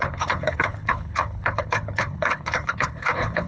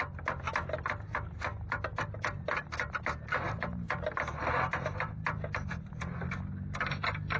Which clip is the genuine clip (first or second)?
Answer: second